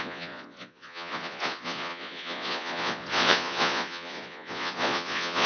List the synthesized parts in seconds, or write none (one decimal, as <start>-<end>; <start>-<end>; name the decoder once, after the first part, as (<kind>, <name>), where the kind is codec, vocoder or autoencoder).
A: 0.0-5.5 (vocoder, Vocos)